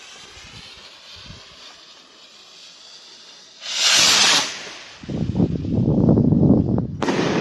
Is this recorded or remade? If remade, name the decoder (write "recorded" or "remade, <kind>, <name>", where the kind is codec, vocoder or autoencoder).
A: recorded